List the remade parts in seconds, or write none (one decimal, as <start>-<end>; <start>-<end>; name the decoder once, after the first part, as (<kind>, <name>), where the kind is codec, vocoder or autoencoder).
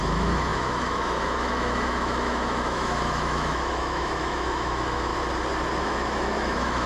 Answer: 0.0-5.1 (autoencoder, DAC-VAE); 5.8-6.9